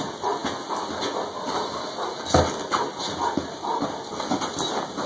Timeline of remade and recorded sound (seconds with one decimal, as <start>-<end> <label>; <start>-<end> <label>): 0.0-5.1 recorded